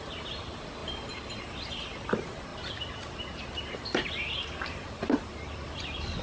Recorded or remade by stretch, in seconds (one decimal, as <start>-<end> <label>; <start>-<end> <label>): 0.0-6.2 recorded